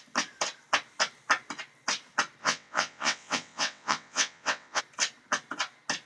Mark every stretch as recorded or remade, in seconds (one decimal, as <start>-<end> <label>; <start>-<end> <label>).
0.0-2.4 recorded; 2.4-4.8 remade; 4.8-6.1 recorded